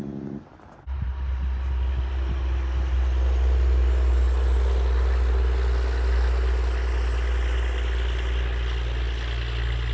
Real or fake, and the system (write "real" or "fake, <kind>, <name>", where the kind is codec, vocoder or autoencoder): real